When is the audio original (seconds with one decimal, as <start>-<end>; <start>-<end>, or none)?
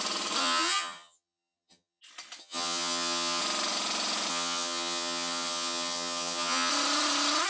0.0-0.4; 2.0-2.4; 3.4-4.3; 6.7-7.5